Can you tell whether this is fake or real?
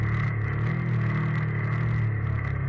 real